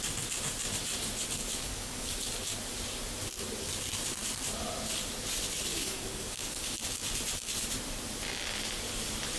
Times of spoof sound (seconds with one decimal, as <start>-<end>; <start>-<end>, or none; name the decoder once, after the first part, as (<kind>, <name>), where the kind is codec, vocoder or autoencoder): 1.4-2.3 (codec, DAC); 5.7-6.8